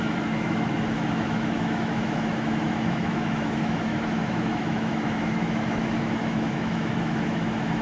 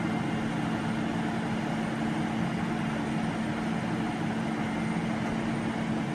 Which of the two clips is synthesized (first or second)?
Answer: first